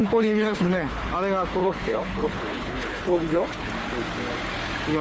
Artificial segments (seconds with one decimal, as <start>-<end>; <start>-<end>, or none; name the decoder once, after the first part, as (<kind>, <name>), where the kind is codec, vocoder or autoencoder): 0.0-1.1 (codec, HILCodec); 1.6-3.7